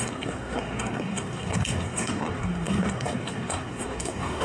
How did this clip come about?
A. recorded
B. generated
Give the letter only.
B